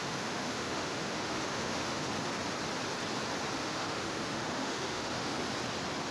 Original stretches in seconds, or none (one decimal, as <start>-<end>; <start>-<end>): 2.1-3.6; 5.4-6.1